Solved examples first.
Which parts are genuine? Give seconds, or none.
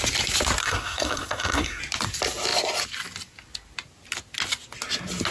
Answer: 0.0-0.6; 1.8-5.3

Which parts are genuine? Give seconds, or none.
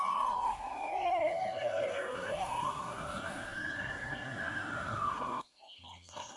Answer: none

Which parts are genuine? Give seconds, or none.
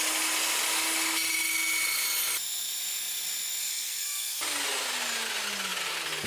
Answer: 0.0-3.6; 4.4-6.3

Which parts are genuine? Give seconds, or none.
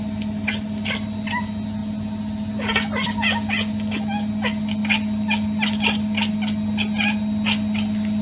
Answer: 0.0-8.2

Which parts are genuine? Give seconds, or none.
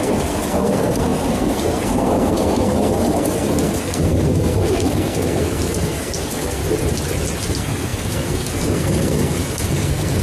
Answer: 6.6-7.5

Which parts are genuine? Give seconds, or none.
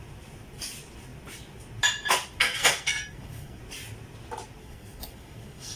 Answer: 0.0-2.4; 3.6-4.6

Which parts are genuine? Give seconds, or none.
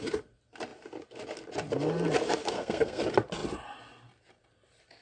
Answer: 0.0-2.4; 3.0-5.0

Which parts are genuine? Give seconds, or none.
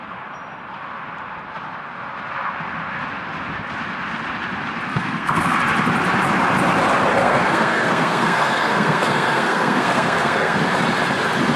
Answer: 0.0-4.9; 5.6-7.1; 10.6-11.6